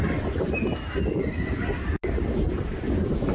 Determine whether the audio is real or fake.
real